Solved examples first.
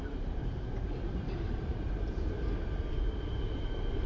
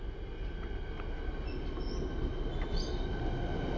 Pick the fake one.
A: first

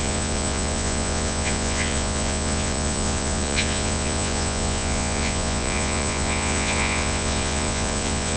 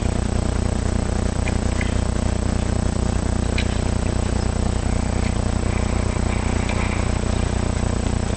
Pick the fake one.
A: first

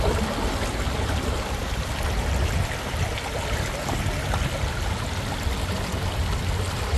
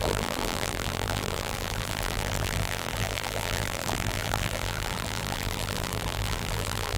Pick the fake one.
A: second